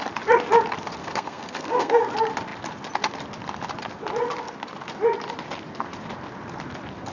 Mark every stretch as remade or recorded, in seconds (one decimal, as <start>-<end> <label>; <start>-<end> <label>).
0.0-1.0 recorded; 1.0-2.1 remade; 2.1-7.1 recorded